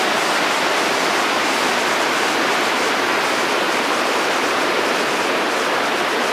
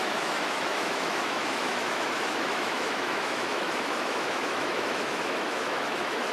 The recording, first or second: first